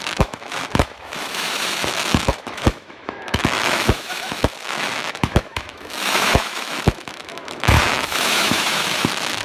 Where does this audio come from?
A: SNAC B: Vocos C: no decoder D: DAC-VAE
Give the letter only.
D